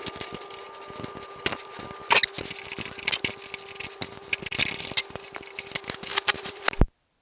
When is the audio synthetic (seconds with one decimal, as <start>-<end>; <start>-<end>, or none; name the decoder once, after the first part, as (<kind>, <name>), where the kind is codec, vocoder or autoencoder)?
6.1-6.6 (vocoder, BigVGAN v2)